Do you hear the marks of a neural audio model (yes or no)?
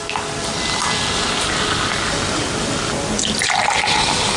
no